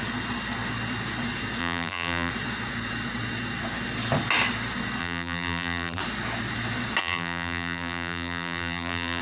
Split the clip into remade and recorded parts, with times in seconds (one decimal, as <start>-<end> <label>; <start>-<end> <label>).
0.0-1.6 recorded; 1.6-2.3 remade; 2.3-5.0 recorded; 5.0-6.0 remade; 6.0-7.0 recorded; 7.0-9.2 remade